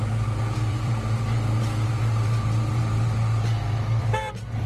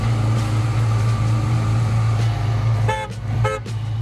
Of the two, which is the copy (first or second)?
first